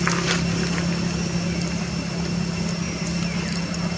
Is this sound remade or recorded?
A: recorded